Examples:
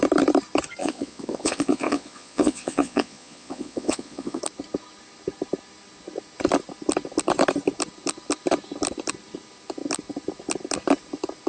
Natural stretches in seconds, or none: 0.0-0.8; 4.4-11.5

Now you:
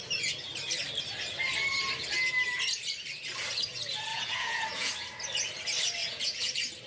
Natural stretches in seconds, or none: 0.0-4.1; 4.9-6.0; 6.5-6.9

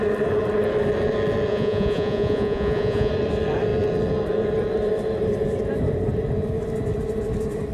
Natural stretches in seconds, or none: 0.0-1.5; 3.1-7.7

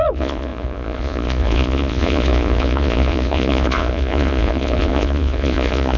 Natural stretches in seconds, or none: none

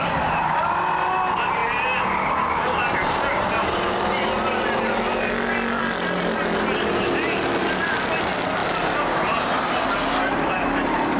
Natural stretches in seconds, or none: 0.0-11.2

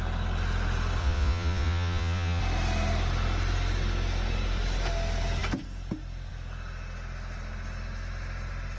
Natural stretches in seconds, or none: 0.0-1.0; 2.4-8.8

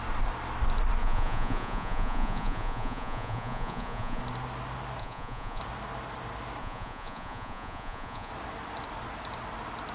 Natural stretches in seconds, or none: 0.0-1.0; 4.2-5.0; 5.6-6.6; 8.3-9.9